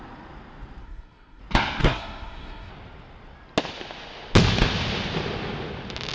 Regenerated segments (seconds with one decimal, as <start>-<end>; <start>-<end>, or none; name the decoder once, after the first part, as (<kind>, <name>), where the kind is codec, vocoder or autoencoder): 0.8-1.4 (codec, SNAC); 1.8-2.7